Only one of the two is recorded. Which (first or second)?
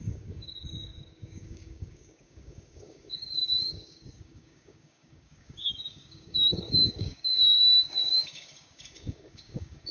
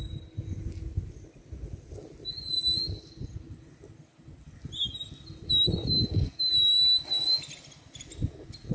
second